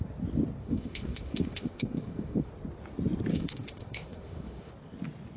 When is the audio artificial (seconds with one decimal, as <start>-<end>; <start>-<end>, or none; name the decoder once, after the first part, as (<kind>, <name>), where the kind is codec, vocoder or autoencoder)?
0.6-2.5 (autoencoder, DAC-VAE); 3.3-4.7